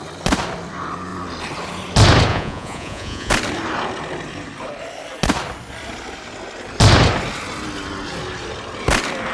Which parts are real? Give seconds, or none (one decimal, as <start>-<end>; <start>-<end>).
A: 0.0-2.3; 3.3-9.3